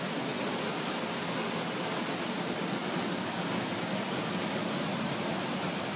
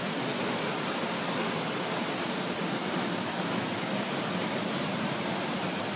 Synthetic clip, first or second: second